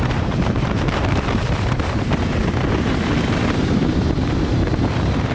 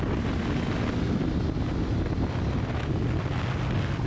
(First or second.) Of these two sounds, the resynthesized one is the first